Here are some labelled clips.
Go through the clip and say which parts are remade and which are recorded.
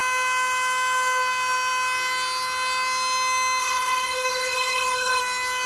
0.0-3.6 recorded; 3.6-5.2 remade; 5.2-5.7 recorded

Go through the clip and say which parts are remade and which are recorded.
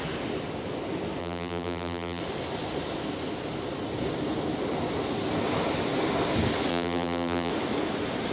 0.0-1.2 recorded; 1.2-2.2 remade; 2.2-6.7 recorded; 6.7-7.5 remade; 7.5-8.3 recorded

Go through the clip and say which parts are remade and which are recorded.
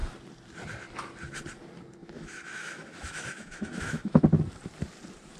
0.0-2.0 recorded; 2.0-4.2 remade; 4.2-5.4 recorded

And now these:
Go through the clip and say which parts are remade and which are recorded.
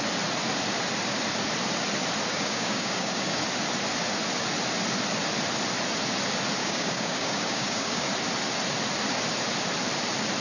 0.0-2.3 recorded; 2.3-3.4 remade; 3.4-6.6 recorded; 6.6-8.1 remade; 8.1-10.4 recorded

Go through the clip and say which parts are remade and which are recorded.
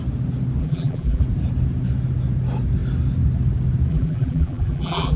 0.0-0.6 recorded; 0.6-1.2 remade; 1.2-3.9 recorded; 3.9-5.2 remade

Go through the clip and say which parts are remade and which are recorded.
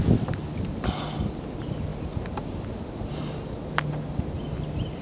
0.0-5.0 recorded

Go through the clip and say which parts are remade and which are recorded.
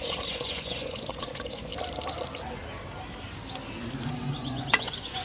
0.0-1.7 remade; 1.7-4.3 recorded; 4.3-5.2 remade